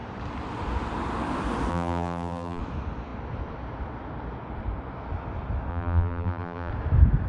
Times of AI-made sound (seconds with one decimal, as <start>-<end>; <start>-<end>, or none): 1.7-2.6; 5.7-6.7